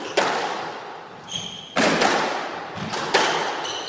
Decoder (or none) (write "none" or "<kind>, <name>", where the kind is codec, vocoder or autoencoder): none